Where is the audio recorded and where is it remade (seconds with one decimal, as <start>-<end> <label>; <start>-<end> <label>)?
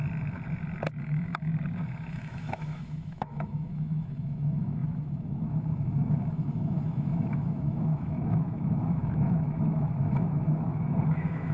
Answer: 0.0-1.0 recorded; 1.0-1.5 remade; 1.5-2.1 recorded; 2.1-11.5 remade